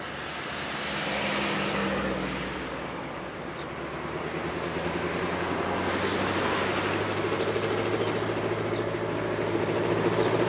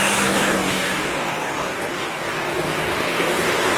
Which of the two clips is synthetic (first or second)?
second